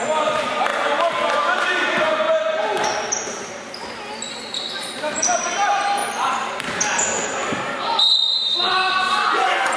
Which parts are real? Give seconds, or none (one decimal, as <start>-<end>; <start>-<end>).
0.7-4.9